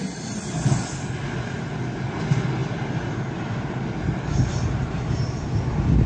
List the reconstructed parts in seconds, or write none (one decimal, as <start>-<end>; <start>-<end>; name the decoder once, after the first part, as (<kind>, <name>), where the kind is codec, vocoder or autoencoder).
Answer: none